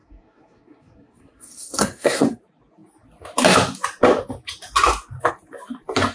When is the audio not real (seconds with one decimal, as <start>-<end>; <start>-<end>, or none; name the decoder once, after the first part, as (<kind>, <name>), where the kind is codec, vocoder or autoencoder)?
0.0-2.4 (codec, SNAC)